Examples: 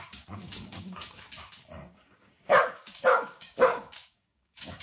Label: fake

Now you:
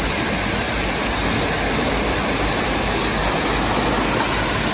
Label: real